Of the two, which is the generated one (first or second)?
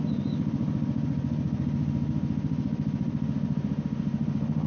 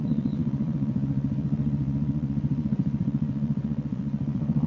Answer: second